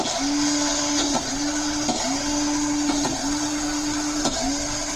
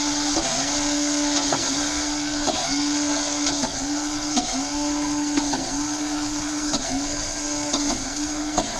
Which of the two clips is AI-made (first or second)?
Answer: second